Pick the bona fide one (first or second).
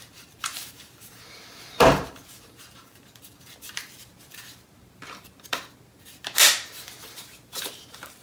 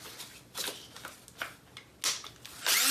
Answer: second